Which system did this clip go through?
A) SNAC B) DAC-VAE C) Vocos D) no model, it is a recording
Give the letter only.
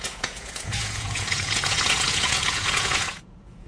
C